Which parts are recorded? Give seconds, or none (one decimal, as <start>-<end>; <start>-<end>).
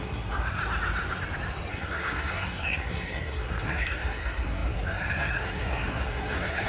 0.6-1.7